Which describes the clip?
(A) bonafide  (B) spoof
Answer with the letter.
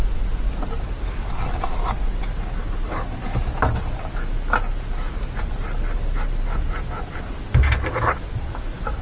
A